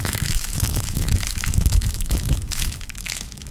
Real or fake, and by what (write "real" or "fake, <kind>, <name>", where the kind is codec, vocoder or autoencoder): fake, autoencoder, DAC-VAE